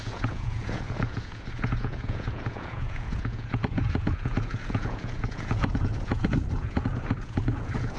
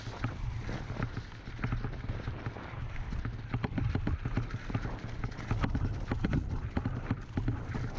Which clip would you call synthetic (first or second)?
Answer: first